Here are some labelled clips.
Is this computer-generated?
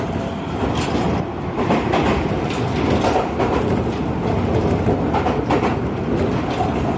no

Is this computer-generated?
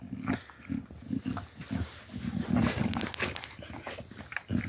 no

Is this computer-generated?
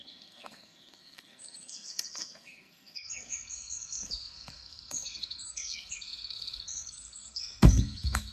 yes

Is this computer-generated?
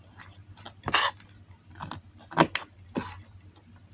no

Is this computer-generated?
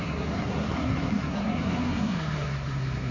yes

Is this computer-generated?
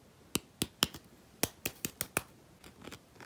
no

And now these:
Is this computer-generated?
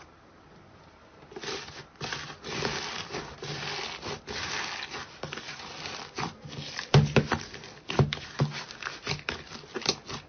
no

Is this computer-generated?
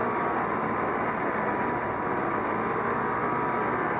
no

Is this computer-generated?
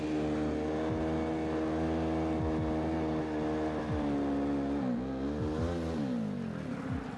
no